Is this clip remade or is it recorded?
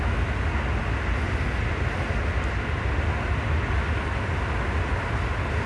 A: recorded